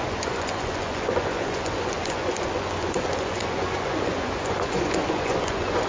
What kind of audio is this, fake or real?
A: fake